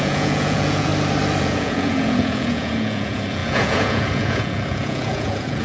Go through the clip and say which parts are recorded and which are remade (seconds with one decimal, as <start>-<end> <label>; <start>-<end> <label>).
0.0-0.9 remade; 0.9-1.4 recorded; 1.4-5.6 remade